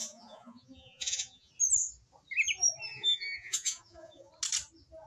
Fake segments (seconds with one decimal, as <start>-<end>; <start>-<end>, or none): 0.0-1.5; 2.9-4.3